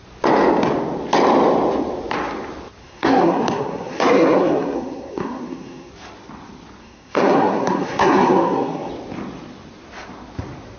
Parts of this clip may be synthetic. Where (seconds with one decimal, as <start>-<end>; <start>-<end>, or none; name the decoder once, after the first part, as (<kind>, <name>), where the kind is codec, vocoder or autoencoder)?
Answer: 2.8-5.9 (codec, SNAC); 6.8-8.9